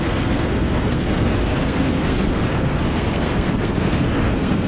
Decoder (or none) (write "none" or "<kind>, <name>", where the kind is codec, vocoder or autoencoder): codec, SNAC